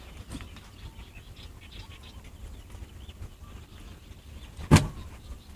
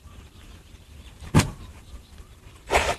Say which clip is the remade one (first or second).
second